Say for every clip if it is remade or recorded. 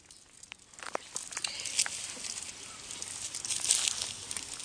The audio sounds recorded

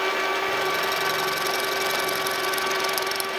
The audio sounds recorded